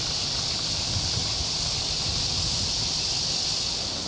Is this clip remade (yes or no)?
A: no